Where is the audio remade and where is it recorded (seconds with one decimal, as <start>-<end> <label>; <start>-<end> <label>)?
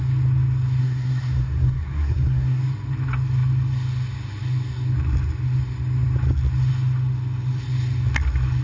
0.0-0.8 recorded; 0.8-2.6 remade; 2.6-8.6 recorded